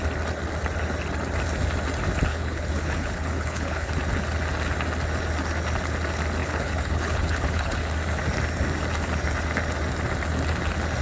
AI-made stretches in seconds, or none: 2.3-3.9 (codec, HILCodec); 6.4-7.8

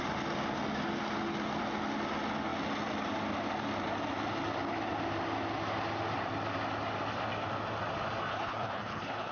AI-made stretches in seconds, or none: 8.3-9.3 (codec, HILCodec)

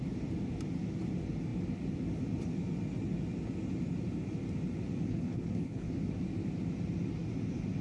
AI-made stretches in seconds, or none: 5.1-5.9 (codec, HILCodec)

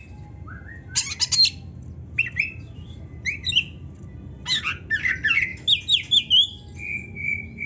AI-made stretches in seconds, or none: none

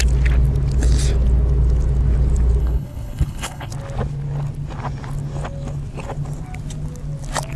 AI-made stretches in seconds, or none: 2.6-3.7 (codec, HILCodec)

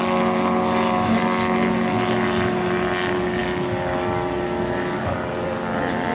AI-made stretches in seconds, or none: none

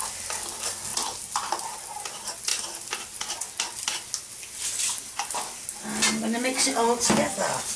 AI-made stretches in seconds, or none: none